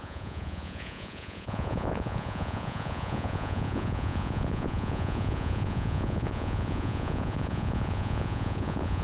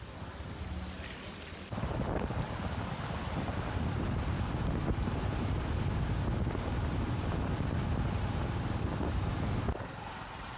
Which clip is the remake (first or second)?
first